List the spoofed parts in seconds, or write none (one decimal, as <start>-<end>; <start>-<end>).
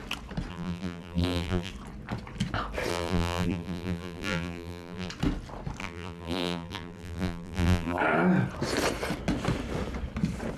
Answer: 0.5-1.7; 2.9-5.1; 5.8-8.0